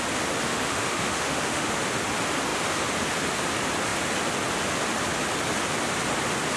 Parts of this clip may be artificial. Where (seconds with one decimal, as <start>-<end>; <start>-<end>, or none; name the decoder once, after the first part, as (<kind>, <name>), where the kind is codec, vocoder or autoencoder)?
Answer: 0.5-1.8 (autoencoder, DAC-VAE)